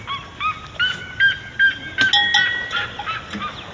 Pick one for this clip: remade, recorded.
recorded